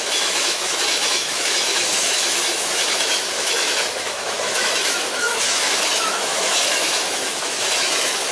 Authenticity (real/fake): fake